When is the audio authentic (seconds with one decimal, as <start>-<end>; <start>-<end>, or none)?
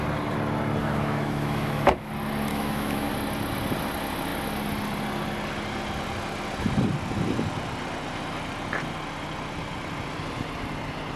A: 0.0-0.8; 2.1-2.5; 3.1-11.2